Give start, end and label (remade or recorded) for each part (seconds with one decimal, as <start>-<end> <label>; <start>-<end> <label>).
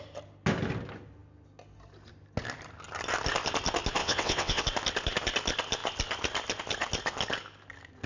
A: 0.0-4.0 recorded; 4.0-4.6 remade; 4.6-8.1 recorded